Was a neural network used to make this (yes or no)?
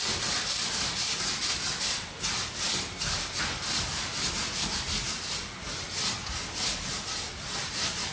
no